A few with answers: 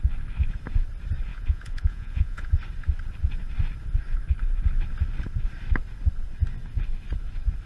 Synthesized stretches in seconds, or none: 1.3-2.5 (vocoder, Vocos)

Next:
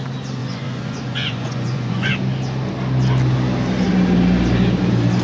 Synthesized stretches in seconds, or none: 0.4-2.1 (vocoder, Vocos)

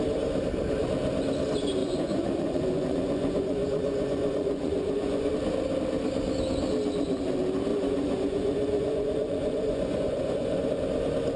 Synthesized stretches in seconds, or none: 1.8-5.3 (vocoder, Vocos); 7.7-10.7

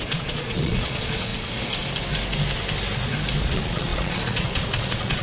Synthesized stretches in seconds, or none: 0.0-1.3 (vocoder, Vocos); 3.4-5.2